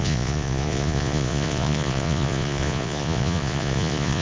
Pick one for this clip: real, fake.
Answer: fake